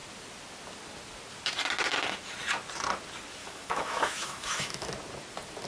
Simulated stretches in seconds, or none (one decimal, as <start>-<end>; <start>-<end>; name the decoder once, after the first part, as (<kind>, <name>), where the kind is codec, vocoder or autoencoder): 3.4-4.9 (autoencoder, DAC-VAE)